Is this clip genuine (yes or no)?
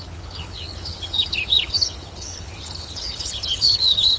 no